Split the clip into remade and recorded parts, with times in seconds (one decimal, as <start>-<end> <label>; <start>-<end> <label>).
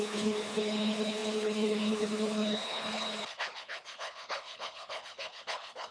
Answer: 0.0-5.9 remade